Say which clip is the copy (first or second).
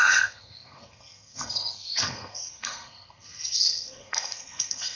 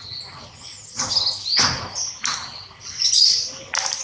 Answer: first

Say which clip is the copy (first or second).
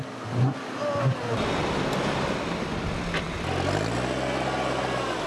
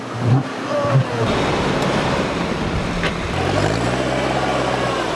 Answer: second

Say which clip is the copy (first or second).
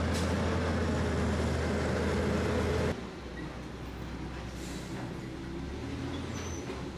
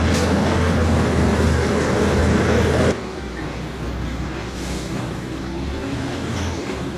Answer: second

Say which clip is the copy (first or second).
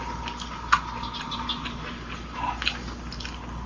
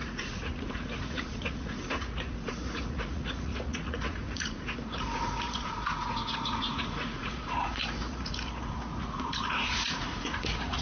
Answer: second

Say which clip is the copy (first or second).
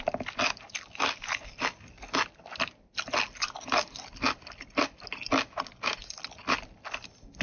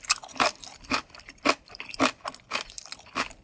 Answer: second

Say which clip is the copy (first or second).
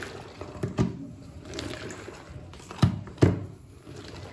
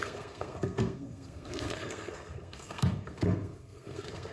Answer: second